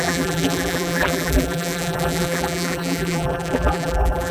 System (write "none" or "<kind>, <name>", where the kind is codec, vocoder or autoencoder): vocoder, BigVGAN v2